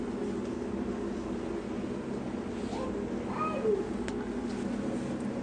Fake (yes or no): no